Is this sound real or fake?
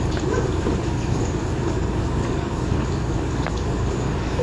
fake